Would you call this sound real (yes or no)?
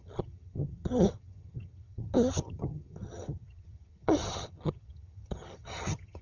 no